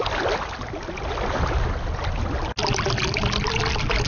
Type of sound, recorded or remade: recorded